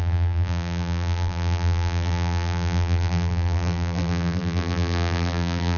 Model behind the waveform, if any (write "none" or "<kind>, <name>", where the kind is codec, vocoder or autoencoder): vocoder, BigVGAN v2